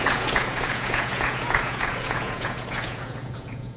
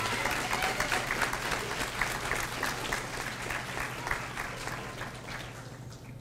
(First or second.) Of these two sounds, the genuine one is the second